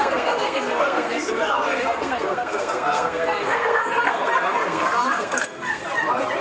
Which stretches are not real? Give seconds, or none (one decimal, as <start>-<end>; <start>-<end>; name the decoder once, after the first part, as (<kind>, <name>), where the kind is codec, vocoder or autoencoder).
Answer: 0.0-5.8 (codec, SNAC)